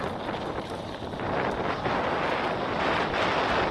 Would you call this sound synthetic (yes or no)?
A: no